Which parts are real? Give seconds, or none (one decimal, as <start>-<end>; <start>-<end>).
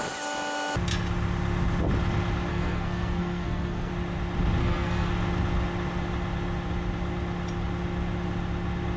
0.0-2.5; 3.9-4.6; 5.1-9.0